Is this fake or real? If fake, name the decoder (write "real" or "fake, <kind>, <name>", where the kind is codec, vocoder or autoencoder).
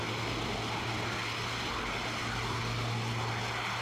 real